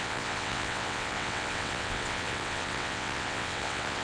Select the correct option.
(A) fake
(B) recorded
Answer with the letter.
A